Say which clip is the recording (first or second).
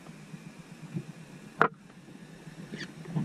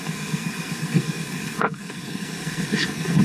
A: first